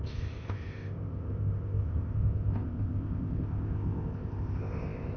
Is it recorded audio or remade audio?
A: remade